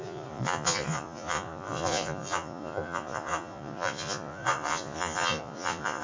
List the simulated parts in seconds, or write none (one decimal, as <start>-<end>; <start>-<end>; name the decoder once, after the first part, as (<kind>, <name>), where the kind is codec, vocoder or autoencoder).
0.0-6.0 (vocoder, Vocos)